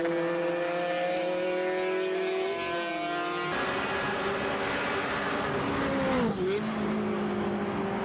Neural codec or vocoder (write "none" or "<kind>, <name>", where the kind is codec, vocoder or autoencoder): none